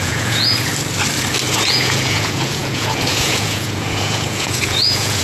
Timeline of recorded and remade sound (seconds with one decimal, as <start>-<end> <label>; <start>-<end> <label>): 0.0-0.7 remade; 0.7-1.5 recorded; 1.5-5.2 remade